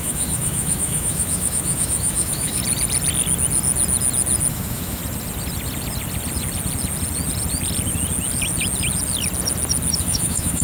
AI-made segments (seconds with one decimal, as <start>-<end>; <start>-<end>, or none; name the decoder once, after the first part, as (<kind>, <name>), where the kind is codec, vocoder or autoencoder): 0.0-2.6 (autoencoder, DAC-VAE); 4.5-5.0; 10.0-10.6